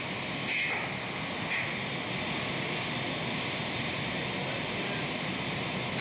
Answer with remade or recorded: recorded